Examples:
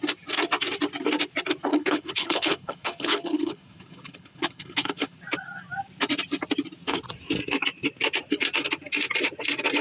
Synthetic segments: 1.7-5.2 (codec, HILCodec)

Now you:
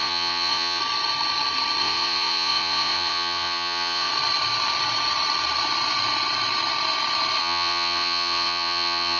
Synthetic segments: 0.0-0.8 (vocoder, Vocos); 1.8-4.1; 7.4-9.2

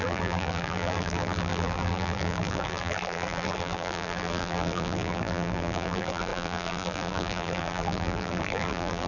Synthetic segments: 0.0-9.1 (vocoder, BigVGAN v2)

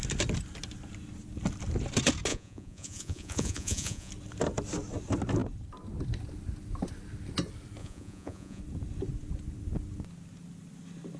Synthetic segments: 2.3-4.1 (vocoder, Vocos); 7.8-8.6

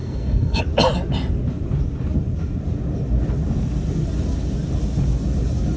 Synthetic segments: 0.0-0.6 (codec, SNAC)

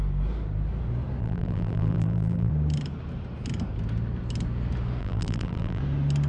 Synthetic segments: 1.2-2.5 (vocoder, BigVGAN v2); 5.0-5.8

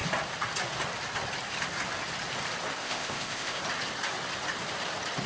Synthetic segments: 2.8-3.6 (codec, ZipCodec)

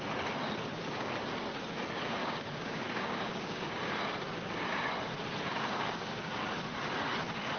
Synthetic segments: 2.2-3.7 (codec, DAC); 5.5-6.4